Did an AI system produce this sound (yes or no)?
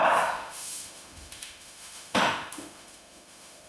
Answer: yes